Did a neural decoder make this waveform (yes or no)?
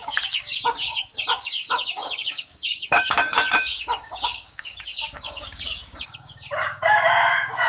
yes